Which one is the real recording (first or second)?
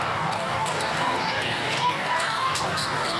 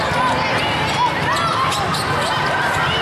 second